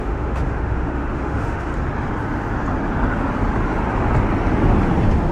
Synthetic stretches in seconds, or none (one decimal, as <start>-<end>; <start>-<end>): 0.0-1.7